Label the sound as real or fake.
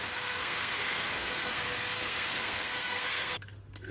fake